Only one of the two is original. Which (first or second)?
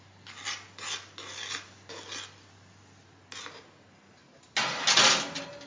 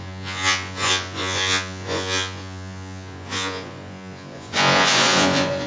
first